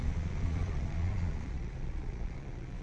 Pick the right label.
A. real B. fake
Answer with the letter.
B